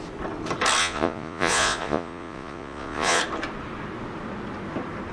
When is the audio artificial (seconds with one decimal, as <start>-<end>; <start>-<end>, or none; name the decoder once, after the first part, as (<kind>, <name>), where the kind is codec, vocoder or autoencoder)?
0.8-3.2 (vocoder, Vocos)